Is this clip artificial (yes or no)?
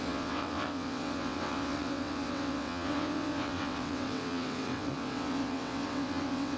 yes